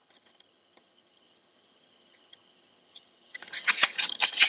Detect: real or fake fake